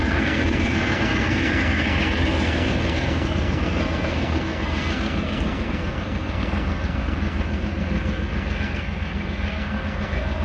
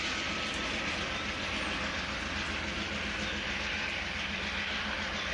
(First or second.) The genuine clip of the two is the second